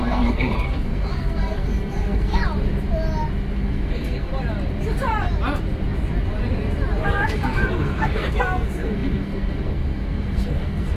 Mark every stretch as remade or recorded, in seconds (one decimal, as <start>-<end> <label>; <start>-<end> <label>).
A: 0.0-2.4 remade; 2.4-3.5 recorded; 3.5-4.3 remade; 4.3-7.0 recorded; 7.0-11.0 remade